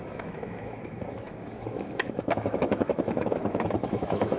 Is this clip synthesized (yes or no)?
yes